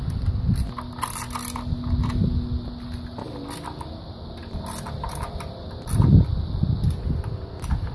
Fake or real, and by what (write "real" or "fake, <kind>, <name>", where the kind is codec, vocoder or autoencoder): real